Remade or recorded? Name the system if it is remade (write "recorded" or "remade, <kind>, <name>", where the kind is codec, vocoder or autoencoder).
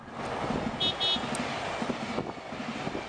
recorded